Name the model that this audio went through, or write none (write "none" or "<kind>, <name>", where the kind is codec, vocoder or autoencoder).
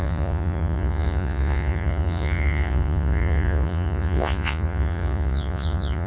vocoder, Vocos